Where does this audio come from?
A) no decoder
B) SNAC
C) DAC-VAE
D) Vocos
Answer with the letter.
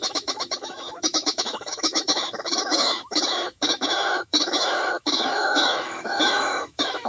C